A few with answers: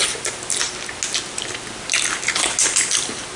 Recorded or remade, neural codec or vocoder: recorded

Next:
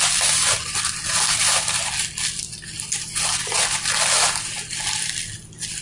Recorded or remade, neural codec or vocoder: recorded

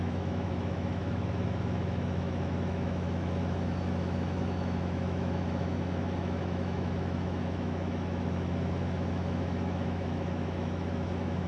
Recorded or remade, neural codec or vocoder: remade, autoencoder, DAC-VAE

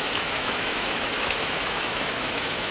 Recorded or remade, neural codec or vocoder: remade, autoencoder, DAC-VAE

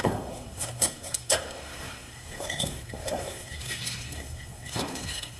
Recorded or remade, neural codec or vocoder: remade, codec, SNAC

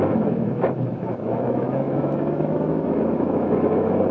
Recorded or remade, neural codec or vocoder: remade, autoencoder, DAC-VAE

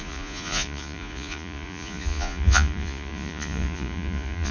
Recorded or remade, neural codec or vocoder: remade, vocoder, Vocos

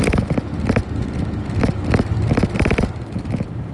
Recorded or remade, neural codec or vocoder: recorded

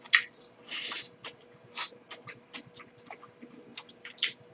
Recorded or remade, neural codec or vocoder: recorded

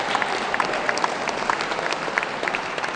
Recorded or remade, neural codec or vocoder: recorded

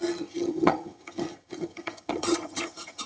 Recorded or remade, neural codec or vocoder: remade, vocoder, HiFi-GAN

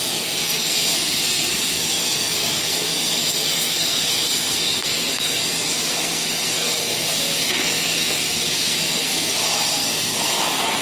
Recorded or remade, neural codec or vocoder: remade, codec, SNAC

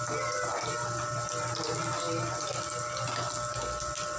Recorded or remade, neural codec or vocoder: recorded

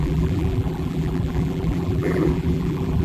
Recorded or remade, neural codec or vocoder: remade, vocoder, BigVGAN v2